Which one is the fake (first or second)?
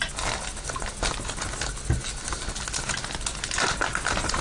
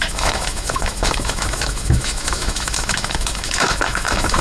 second